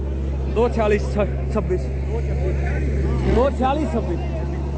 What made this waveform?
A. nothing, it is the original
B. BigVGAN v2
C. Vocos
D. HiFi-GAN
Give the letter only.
A